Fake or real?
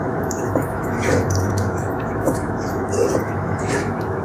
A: fake